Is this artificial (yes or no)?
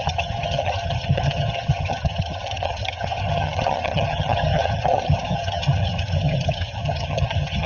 yes